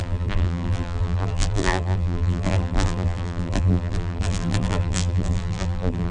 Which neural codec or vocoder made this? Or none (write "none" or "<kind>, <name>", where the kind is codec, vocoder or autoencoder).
vocoder, BigVGAN v2